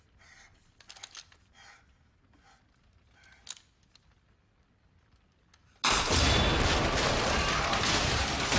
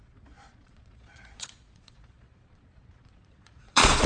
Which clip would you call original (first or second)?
first